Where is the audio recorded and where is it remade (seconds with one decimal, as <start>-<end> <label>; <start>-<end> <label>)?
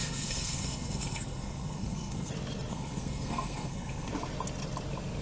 0.0-2.3 remade; 2.3-2.7 recorded; 2.7-4.1 remade; 4.1-5.2 recorded